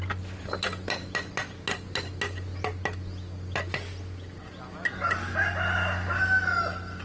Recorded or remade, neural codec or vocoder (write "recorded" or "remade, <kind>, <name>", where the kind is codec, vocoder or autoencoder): recorded